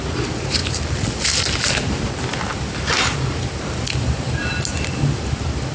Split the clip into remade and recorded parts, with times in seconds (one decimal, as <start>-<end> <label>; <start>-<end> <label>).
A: 0.0-5.7 recorded